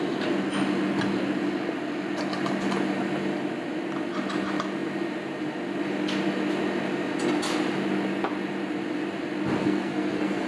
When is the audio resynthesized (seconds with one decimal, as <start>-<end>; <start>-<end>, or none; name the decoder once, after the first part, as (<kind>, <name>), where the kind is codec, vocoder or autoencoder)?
9.6-10.5 (codec, SNAC)